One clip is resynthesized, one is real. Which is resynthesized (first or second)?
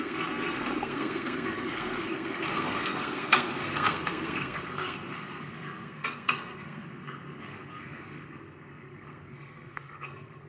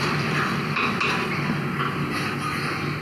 first